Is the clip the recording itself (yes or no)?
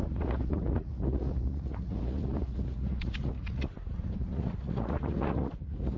no